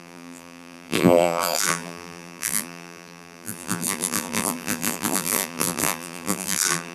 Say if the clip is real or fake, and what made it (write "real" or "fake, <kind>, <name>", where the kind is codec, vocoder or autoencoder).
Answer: fake, vocoder, BigVGAN v2